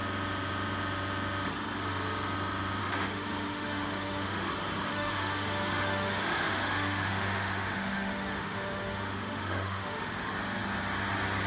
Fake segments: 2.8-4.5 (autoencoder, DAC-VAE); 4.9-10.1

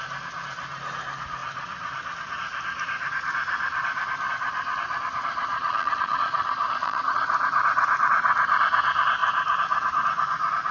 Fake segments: 5.5-7.3 (vocoder, Vocos)

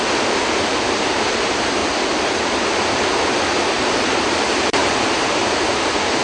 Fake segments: 0.0-1.8 (vocoder, BigVGAN v2); 3.9-6.2

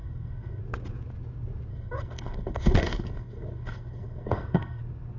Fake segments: 0.0-0.6 (codec, SNAC); 1.7-4.8

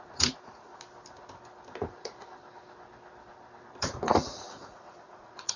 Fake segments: 0.0-0.7 (vocoder, Vocos); 3.8-5.6

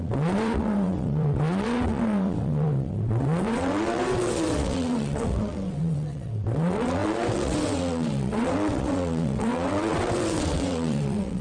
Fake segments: 0.0-11.4 (vocoder, WaveNeXt)

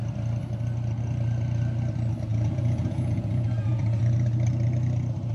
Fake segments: 2.3-4.0 (vocoder, Vocos)